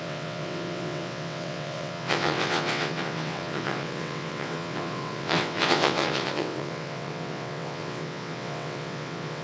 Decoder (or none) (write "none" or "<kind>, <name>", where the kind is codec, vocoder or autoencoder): vocoder, WaveNeXt